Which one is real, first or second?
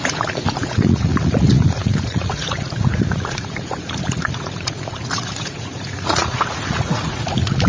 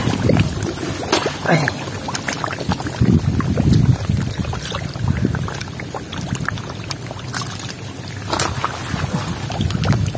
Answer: second